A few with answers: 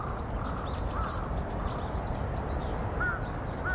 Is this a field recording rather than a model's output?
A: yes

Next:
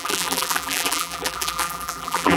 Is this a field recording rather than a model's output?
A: no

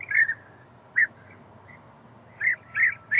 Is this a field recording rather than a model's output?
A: yes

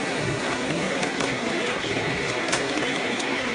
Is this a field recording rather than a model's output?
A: no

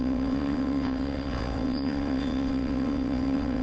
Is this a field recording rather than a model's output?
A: no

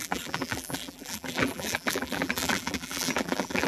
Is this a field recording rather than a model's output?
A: no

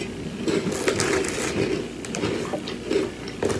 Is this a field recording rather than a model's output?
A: yes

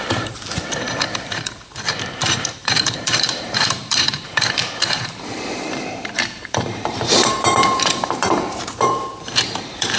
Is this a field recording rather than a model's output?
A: no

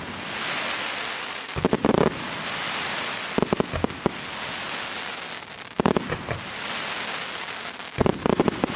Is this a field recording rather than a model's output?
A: yes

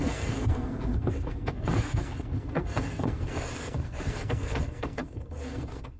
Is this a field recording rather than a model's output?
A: no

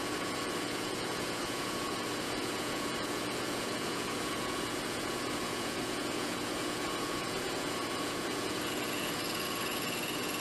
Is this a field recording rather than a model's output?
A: no